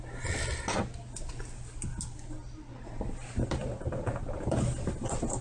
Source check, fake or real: real